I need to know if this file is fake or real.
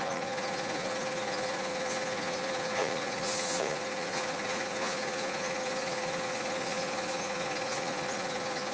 fake